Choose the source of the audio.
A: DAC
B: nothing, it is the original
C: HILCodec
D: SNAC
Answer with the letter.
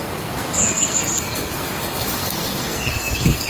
D